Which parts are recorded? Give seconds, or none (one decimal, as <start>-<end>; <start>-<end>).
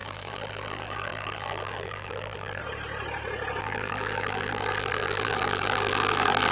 2.6-3.6